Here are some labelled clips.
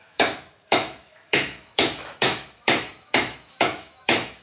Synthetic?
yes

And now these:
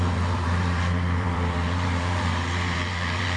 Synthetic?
yes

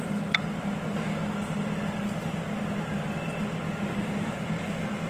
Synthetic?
no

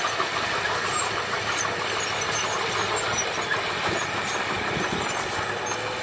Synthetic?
no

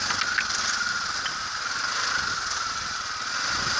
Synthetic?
no